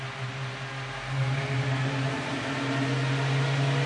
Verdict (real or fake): real